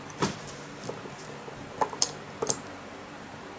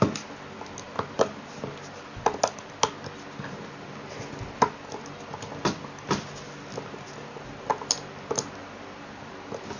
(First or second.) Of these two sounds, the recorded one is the second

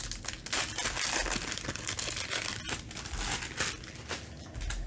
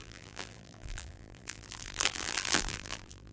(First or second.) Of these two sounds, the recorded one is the first